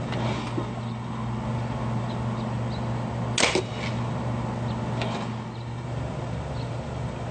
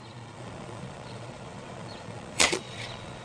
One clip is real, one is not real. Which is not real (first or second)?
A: second